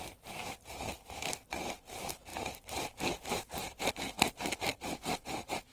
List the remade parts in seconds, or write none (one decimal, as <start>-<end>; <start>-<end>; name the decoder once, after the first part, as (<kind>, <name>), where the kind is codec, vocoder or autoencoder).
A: 0.4-0.9 (vocoder, BigVGAN v2); 2.3-3.9; 4.7-5.7